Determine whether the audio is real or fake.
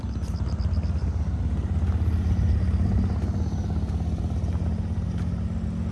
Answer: real